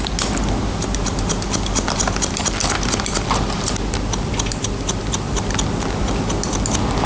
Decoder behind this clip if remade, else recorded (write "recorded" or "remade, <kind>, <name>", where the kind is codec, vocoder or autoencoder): recorded